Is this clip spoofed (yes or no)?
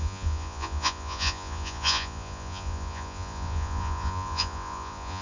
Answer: yes